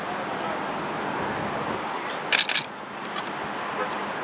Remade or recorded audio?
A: recorded